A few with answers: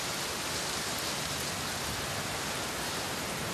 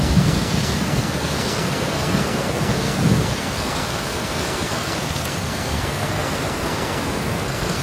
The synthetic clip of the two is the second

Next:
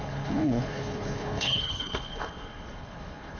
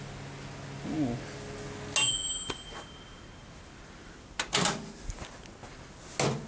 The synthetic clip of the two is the first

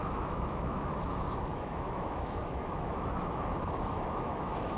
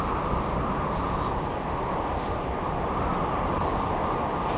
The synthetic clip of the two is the first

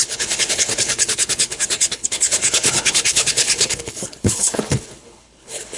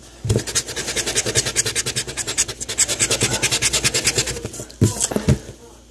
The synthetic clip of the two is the first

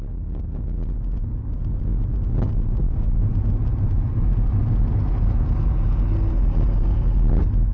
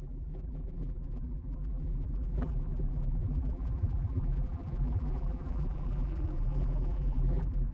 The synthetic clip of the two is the second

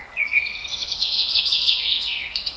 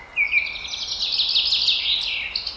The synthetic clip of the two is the first